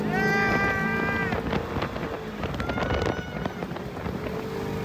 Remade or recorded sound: recorded